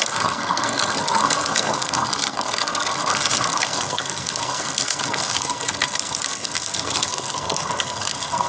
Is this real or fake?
fake